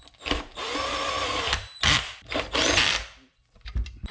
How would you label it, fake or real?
real